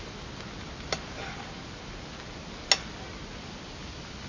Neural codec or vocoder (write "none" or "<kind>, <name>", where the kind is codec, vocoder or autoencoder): none